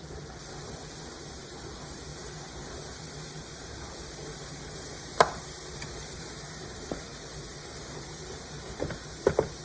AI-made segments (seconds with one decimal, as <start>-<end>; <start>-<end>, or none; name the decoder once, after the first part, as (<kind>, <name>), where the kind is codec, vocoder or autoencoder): 2.1-6.3 (vocoder, BigVGAN v2)

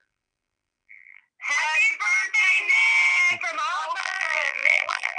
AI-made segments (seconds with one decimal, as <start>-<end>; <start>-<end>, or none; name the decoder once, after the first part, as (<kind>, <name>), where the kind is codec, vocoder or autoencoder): 0.0-1.2 (vocoder, BigVGAN v2); 4.0-5.2